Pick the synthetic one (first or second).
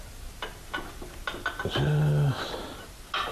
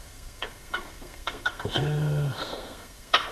second